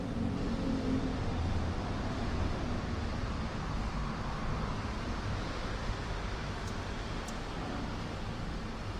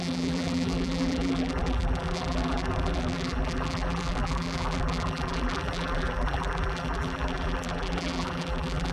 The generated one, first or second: second